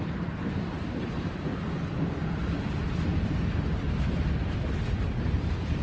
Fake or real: real